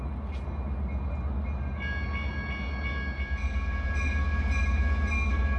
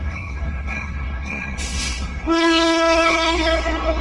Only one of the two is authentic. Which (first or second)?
first